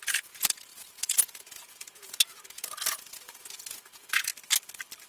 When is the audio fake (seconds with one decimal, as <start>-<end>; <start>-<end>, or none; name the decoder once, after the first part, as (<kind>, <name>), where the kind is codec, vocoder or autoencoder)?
0.0-4.3 (vocoder, Vocos)